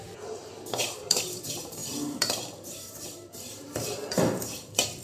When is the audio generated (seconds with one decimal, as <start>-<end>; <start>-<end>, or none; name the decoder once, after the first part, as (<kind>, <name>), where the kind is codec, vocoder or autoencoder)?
0.0-5.0 (vocoder, BigVGAN v2)